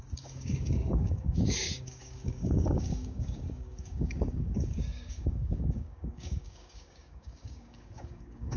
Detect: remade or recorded remade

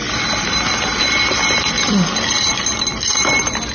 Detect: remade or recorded remade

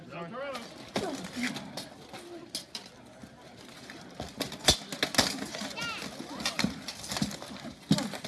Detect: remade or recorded recorded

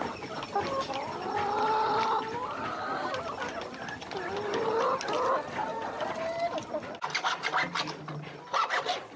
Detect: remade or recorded recorded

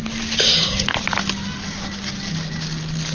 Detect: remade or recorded recorded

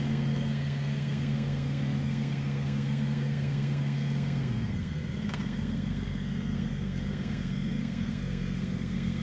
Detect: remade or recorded remade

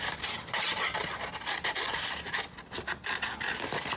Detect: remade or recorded recorded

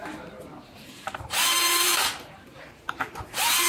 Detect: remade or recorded remade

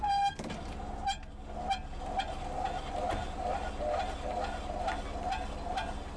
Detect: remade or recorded recorded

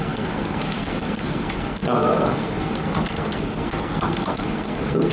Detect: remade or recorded remade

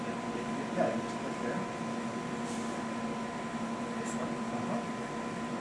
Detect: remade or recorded recorded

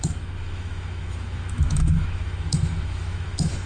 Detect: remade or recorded remade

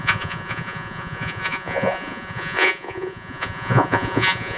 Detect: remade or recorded remade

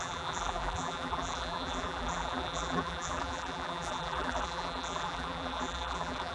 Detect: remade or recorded remade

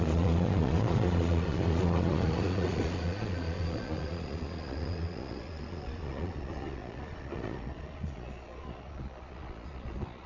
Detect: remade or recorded remade